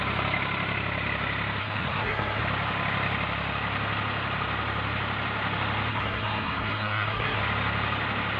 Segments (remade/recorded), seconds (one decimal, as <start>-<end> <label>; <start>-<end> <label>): 0.0-1.6 recorded; 1.6-2.4 remade; 2.4-5.9 recorded; 5.9-7.4 remade; 7.4-8.4 recorded